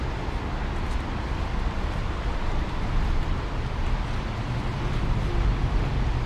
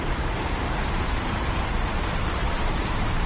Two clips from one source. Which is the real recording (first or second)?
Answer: first